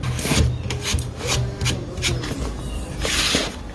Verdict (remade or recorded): recorded